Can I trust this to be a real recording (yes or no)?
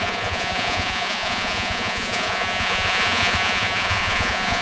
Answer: no